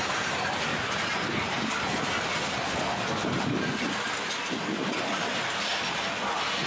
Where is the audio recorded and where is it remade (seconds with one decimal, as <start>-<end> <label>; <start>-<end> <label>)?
0.0-6.7 recorded